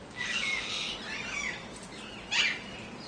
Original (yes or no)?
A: yes